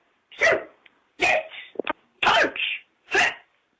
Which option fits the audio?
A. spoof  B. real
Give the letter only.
A